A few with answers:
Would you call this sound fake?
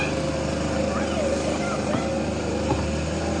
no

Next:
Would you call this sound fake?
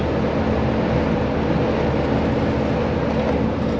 no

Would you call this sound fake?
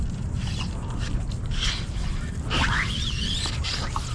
no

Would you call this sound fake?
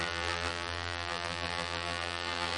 yes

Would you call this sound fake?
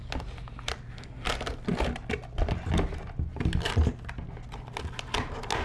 no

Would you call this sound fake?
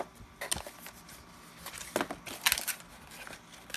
no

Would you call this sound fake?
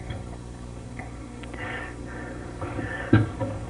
yes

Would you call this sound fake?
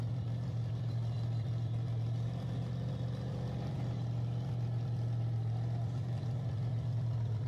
yes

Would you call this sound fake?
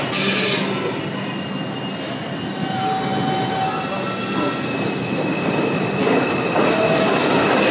no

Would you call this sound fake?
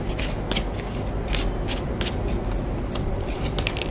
no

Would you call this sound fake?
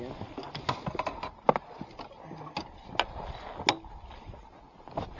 no